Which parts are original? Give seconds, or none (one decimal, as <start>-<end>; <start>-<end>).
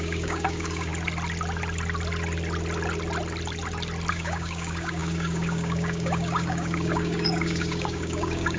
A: 0.9-4.1